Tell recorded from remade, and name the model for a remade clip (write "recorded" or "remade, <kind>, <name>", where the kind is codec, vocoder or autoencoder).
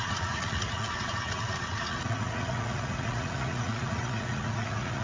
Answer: remade, vocoder, Vocos